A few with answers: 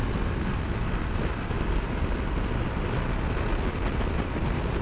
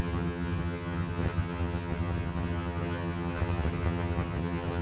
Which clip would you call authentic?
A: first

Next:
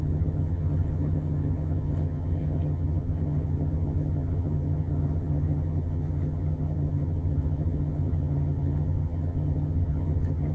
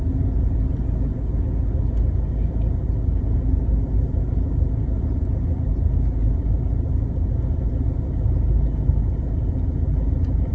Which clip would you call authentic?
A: second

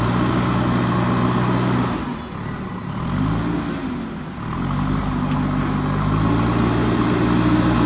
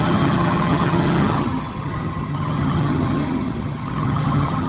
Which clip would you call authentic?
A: first